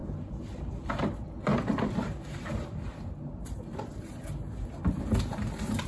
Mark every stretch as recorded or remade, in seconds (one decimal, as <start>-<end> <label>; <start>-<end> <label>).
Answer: 0.0-0.7 remade; 0.7-1.5 recorded; 1.5-5.0 remade; 5.0-5.9 recorded